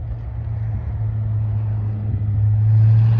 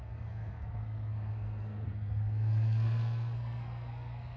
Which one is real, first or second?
first